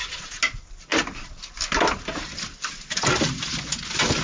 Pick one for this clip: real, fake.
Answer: real